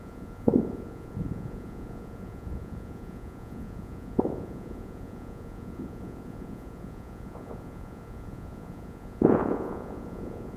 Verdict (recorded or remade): remade